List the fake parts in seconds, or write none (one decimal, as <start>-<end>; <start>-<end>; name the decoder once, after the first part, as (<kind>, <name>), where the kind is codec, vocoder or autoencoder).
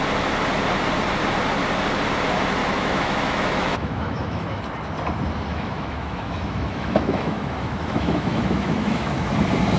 2.6-4.6 (autoencoder, DAC-VAE); 5.5-9.3